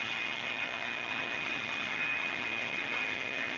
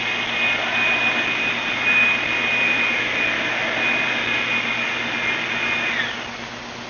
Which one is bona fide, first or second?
second